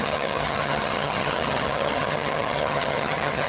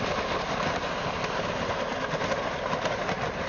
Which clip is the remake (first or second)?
first